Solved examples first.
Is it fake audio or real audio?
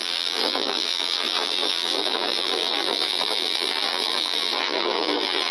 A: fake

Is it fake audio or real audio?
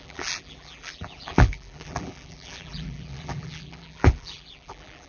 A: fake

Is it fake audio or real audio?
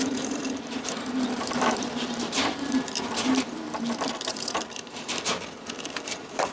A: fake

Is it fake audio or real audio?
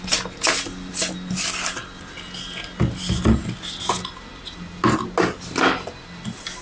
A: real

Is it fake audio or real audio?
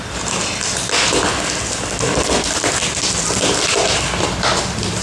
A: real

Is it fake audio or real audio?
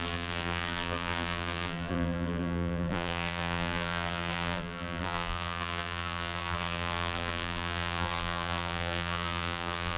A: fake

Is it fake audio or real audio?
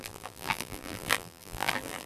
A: fake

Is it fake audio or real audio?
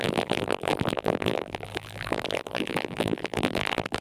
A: fake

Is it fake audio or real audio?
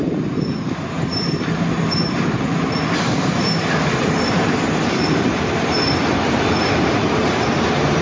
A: fake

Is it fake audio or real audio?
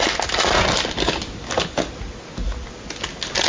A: real